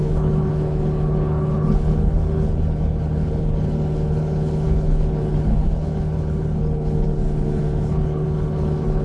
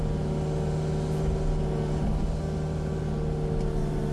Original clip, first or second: second